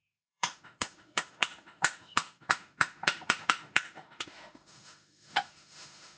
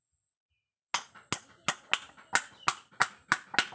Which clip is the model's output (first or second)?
first